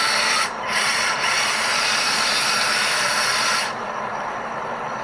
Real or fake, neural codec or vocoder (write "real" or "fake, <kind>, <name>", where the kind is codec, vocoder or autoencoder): fake, vocoder, BigVGAN v2